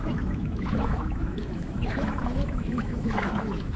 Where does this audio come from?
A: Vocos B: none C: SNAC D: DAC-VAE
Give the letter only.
D